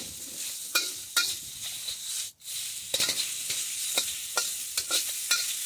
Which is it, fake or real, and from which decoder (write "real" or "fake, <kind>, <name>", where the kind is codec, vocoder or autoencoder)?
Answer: real